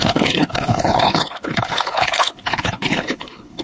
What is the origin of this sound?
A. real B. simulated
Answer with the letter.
B